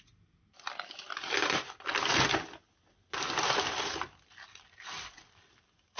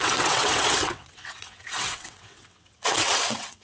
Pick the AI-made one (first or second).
second